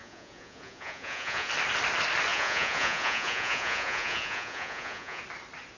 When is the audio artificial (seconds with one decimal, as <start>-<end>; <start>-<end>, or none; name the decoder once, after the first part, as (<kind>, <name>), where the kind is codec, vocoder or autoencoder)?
0.0-1.5 (vocoder, Vocos); 2.3-5.2